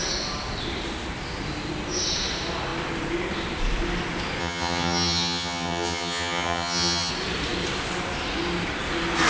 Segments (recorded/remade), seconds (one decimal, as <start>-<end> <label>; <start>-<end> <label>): 0.0-4.4 recorded; 4.4-7.1 remade; 7.1-9.3 recorded